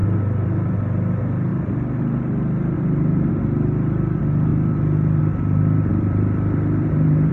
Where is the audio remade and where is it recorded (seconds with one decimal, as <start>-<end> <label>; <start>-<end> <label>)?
0.0-0.8 remade; 0.8-1.5 recorded; 1.5-3.3 remade; 3.3-4.5 recorded; 4.5-5.2 remade; 5.2-5.9 recorded; 5.9-7.3 remade